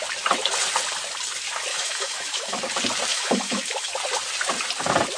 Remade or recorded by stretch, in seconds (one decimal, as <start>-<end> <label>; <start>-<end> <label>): 0.0-1.7 recorded; 1.7-2.6 remade; 2.6-3.1 recorded; 3.1-3.9 remade; 3.9-5.2 recorded

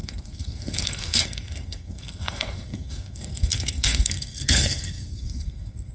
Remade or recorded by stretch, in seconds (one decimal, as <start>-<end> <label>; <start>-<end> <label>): 0.0-5.9 remade

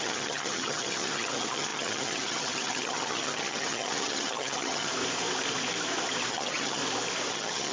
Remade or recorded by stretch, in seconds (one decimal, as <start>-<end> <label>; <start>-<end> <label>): 0.0-4.9 remade; 4.9-6.3 recorded; 6.3-6.8 remade; 6.8-7.3 recorded; 7.3-7.7 remade

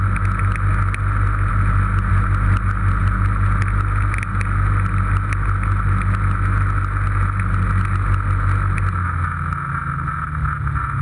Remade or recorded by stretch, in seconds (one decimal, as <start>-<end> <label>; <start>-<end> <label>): 0.0-11.0 recorded